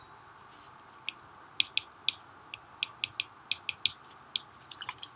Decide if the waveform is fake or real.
real